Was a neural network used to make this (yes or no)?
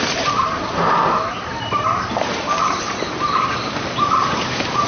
yes